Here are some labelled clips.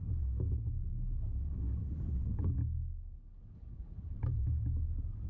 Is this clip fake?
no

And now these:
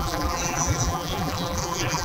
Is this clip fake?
yes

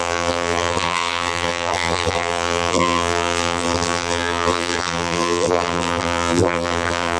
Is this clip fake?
yes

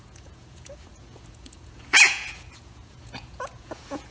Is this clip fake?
yes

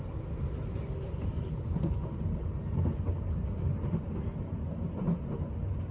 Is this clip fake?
no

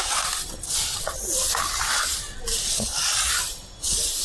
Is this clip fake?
no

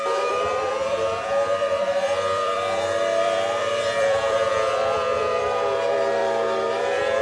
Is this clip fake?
yes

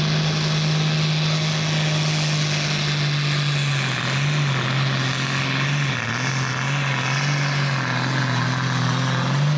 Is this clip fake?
no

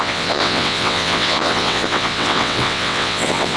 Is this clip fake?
yes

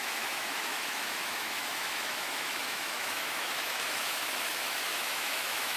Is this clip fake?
yes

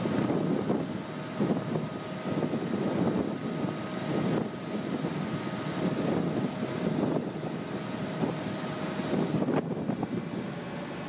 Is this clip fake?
no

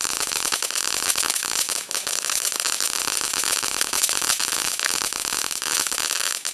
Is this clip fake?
yes